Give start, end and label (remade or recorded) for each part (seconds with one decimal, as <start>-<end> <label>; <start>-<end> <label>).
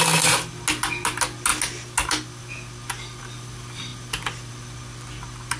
0.0-5.6 recorded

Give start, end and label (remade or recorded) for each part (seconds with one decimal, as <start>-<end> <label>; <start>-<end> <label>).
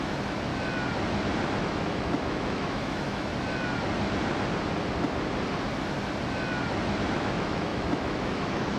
0.0-0.5 remade; 0.5-1.6 recorded; 1.6-3.3 remade; 3.3-7.1 recorded; 7.1-8.8 remade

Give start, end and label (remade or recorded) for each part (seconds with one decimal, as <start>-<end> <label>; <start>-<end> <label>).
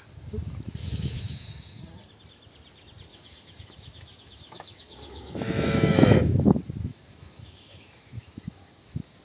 0.0-0.8 recorded; 0.8-1.8 remade; 1.8-3.1 recorded; 3.1-6.5 remade; 6.5-6.9 recorded; 6.9-9.2 remade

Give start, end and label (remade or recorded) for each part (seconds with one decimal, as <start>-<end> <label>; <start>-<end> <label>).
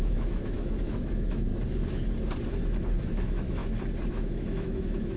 0.0-1.5 remade; 1.5-3.0 recorded; 3.0-3.6 remade; 3.6-4.1 recorded; 4.1-5.2 remade